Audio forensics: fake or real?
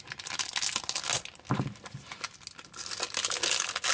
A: real